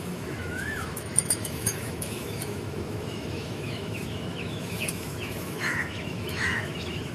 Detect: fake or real fake